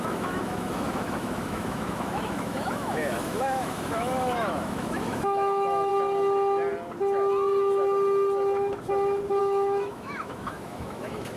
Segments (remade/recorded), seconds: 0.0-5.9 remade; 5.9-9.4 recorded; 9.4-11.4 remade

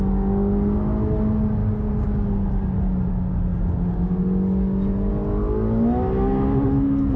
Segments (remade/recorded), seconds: 0.0-7.2 recorded

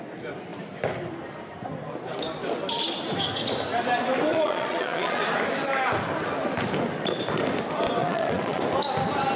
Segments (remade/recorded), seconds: 0.0-4.3 recorded; 4.3-5.2 remade; 5.2-8.0 recorded; 8.0-8.6 remade; 8.6-9.4 recorded